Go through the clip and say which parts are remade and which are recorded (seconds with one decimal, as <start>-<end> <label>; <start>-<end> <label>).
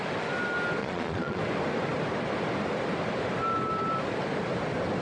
0.0-0.8 recorded; 0.8-1.4 remade; 1.4-5.0 recorded